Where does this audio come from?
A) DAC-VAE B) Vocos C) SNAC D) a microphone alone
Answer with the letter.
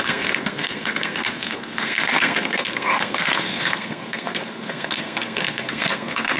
C